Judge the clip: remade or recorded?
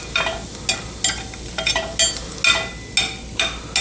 recorded